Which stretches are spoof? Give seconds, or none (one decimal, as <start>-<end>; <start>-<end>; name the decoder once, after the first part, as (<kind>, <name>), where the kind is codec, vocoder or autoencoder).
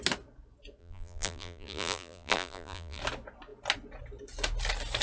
0.8-3.0 (vocoder, BigVGAN v2)